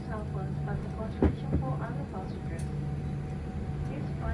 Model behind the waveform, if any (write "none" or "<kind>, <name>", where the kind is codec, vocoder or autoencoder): none